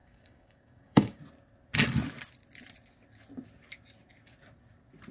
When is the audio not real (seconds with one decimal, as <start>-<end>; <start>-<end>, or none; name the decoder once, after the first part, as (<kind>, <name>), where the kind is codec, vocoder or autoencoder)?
0.0-1.2 (codec, DAC)